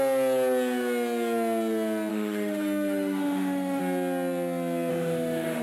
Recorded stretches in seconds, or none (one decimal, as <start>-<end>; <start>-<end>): 0.0-2.1; 3.8-4.9

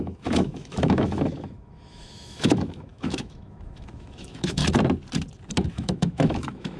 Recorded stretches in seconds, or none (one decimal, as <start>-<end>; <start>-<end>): 4.6-5.7

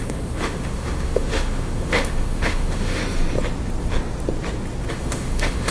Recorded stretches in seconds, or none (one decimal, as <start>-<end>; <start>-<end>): 3.0-4.9

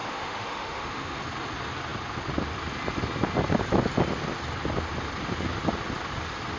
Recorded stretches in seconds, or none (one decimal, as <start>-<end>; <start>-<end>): 1.2-6.6

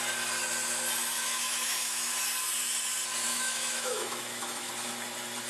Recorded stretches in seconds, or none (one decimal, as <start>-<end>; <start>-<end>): 0.0-1.0; 2.1-3.3; 4.7-5.5

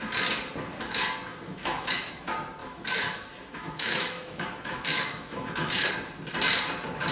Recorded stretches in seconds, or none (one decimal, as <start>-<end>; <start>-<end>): 0.0-1.3; 2.2-2.6; 5.9-7.1

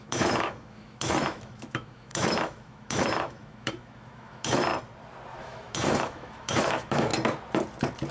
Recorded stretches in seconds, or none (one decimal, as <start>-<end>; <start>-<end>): 4.7-5.4; 7.1-8.1

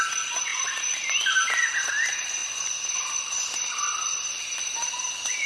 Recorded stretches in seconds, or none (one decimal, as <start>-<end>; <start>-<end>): 0.0-5.5